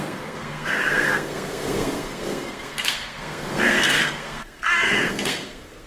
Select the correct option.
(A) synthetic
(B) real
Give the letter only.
A